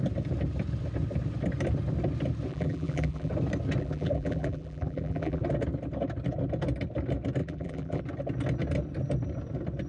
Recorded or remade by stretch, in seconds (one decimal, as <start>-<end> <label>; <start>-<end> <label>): 0.0-2.5 recorded; 2.5-3.3 remade; 3.3-3.8 recorded; 3.8-5.4 remade; 5.4-7.4 recorded; 7.4-8.0 remade; 8.0-9.9 recorded